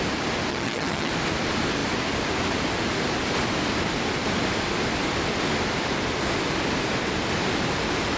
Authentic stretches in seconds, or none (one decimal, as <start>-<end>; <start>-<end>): 0.0-0.5; 1.1-8.2